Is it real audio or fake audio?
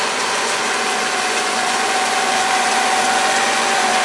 fake